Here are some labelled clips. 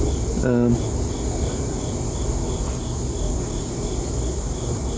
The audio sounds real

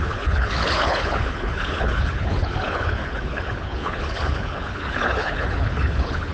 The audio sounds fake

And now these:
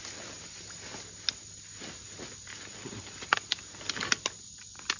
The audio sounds real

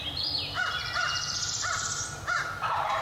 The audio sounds fake